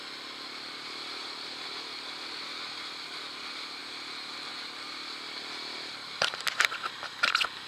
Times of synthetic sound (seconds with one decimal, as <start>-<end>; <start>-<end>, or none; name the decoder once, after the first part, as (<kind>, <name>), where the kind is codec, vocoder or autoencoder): none

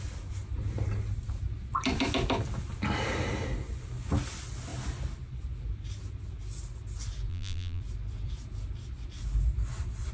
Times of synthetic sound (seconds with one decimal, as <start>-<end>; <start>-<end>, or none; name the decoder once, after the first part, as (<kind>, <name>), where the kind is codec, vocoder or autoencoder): 7.3-7.8 (vocoder, BigVGAN v2)

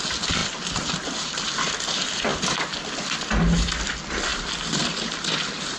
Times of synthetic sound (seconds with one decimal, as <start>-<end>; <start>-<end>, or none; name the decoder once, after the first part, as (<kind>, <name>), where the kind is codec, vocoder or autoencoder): none